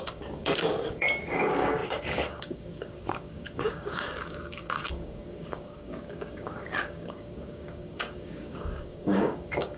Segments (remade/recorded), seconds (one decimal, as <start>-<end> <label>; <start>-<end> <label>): 0.0-9.8 remade